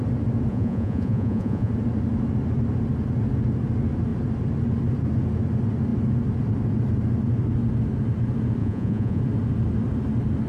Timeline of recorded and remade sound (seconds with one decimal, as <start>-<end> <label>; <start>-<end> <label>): 0.0-0.5 recorded; 0.5-1.7 remade; 1.7-8.6 recorded; 8.6-9.2 remade; 9.2-10.5 recorded